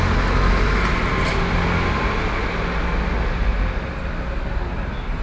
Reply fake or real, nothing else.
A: real